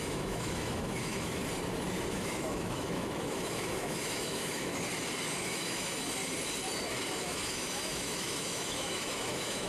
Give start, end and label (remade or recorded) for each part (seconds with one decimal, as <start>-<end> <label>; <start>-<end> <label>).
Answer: 0.0-1.4 remade; 1.4-2.1 recorded; 2.1-4.7 remade; 4.7-5.4 recorded; 5.4-5.9 remade; 5.9-7.2 recorded; 7.2-9.7 remade